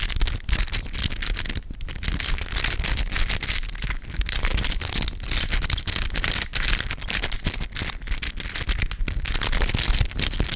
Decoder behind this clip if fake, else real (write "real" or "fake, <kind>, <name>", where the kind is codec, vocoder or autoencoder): real